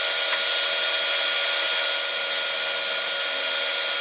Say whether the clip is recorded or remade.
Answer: recorded